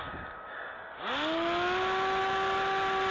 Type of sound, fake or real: real